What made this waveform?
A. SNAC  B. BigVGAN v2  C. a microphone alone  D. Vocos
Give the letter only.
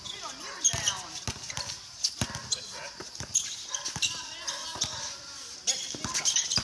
C